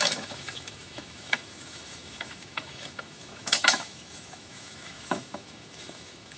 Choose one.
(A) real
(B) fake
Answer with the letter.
B